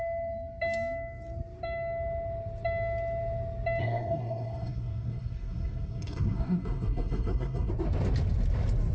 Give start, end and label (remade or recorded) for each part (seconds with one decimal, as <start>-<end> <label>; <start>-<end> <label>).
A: 0.0-3.8 recorded; 3.8-7.7 remade; 7.7-8.9 recorded